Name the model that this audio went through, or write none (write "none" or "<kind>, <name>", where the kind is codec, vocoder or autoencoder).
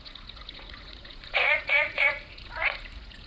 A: vocoder, Vocos